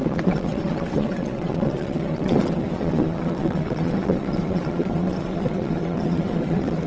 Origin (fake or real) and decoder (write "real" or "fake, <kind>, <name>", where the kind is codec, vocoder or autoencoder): fake, vocoder, WaveNeXt